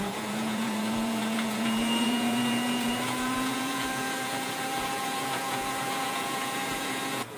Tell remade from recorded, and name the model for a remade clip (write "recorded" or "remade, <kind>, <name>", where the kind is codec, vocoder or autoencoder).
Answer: remade, vocoder, Vocos